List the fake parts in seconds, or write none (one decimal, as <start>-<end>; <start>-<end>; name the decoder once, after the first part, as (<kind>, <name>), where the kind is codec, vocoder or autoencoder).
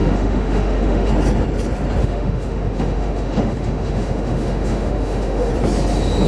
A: 0.0-1.1 (autoencoder, DAC-VAE); 2.0-5.5